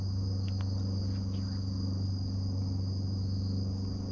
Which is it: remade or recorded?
recorded